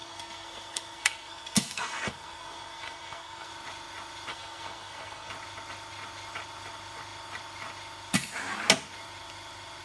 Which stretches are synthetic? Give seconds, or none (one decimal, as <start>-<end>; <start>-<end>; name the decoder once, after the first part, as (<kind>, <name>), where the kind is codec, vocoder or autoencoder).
0.0-3.5 (codec, SNAC); 4.3-5.3